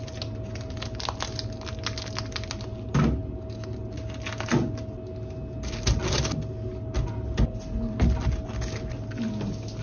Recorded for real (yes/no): yes